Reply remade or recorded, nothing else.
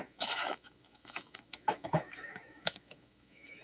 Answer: remade